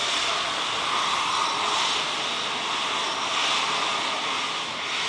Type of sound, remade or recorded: recorded